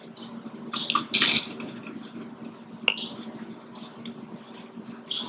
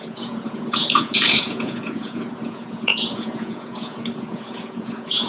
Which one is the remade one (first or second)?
second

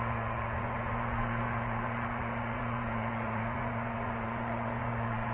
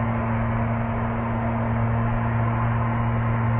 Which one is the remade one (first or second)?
first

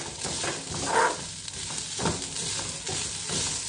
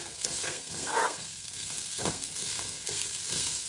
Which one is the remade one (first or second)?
second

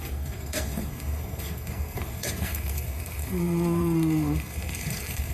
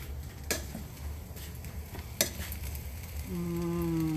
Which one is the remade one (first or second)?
first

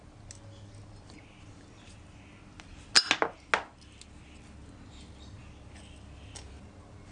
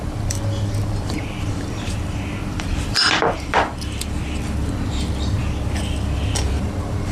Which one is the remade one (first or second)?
second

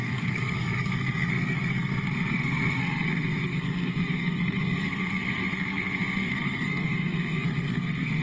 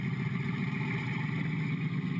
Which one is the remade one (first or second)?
first